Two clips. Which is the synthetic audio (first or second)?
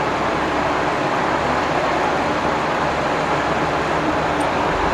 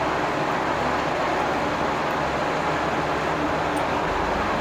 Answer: first